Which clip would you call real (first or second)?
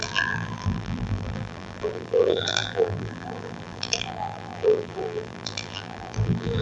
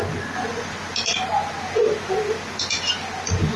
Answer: second